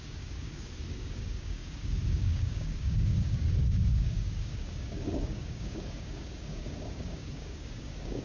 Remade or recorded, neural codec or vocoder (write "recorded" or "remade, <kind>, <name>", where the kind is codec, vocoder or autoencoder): remade, codec, DAC